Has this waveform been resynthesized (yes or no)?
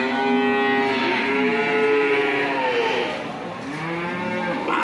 no